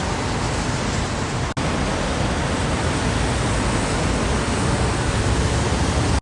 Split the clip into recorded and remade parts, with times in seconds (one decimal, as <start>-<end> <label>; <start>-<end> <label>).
0.0-6.2 recorded